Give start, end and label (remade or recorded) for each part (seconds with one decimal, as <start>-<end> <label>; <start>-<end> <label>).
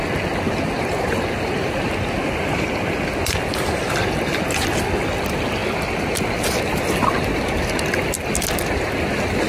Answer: 0.0-9.5 recorded